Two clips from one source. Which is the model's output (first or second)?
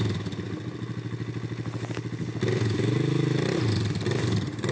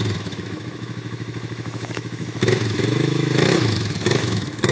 second